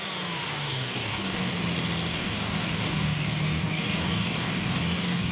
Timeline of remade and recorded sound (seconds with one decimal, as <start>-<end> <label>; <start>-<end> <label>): 0.0-0.5 recorded; 0.5-1.5 remade; 1.5-2.1 recorded; 2.1-5.3 remade